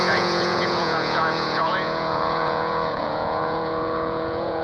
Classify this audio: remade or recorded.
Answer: remade